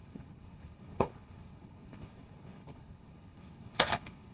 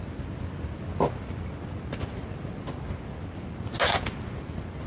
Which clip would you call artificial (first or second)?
first